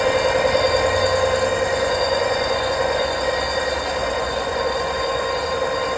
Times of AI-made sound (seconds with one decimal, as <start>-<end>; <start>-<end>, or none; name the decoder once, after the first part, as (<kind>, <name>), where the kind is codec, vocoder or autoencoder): 1.7-3.2 (vocoder, Vocos); 4.0-5.4